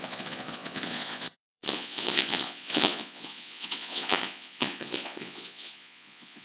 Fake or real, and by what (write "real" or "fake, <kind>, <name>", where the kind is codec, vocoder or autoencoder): fake, vocoder, Vocos